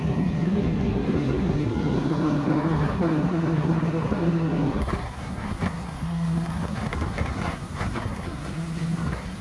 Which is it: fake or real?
fake